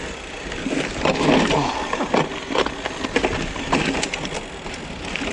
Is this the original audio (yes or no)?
yes